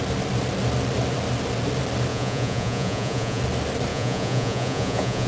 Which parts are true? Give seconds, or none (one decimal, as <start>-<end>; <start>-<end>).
0.0-2.1; 3.4-3.9